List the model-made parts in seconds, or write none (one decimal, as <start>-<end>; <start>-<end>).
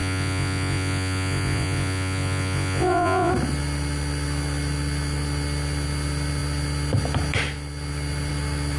0.0-3.3